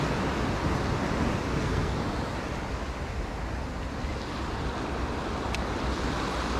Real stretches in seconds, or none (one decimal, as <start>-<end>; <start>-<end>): 0.0-1.5; 2.0-6.6